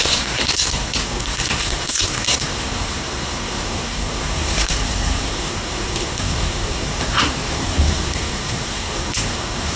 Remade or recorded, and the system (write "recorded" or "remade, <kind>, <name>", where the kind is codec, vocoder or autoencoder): remade, codec, SNAC